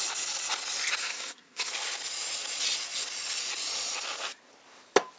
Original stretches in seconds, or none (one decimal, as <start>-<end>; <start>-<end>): 0.0-1.0; 1.7-5.2